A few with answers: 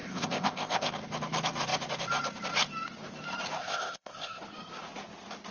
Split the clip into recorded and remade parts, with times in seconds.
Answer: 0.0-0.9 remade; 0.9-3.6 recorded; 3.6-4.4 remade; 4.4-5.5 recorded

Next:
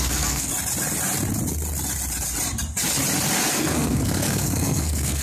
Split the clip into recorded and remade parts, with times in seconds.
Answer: 0.0-0.5 remade; 0.5-3.5 recorded; 3.5-5.2 remade

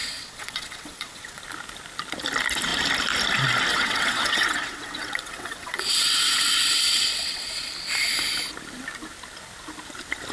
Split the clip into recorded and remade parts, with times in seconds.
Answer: 0.0-1.4 remade; 1.4-3.7 recorded; 3.7-7.5 remade; 7.5-10.3 recorded